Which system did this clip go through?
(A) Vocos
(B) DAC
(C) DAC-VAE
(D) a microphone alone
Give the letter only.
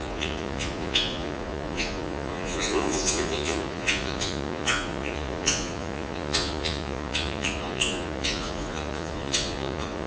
A